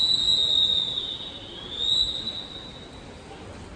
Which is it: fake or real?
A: real